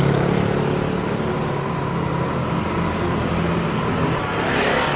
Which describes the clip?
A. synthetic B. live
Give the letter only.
B